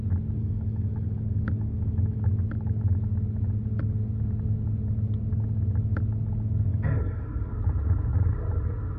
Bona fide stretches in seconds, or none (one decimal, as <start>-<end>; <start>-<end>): 0.0-0.4; 2.2-6.7; 7.6-9.0